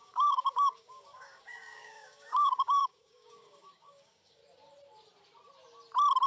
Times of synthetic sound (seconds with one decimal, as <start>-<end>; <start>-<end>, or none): 0.0-4.4